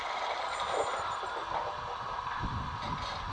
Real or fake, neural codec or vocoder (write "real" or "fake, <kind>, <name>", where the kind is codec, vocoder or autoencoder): real